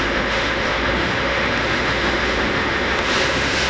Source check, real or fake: fake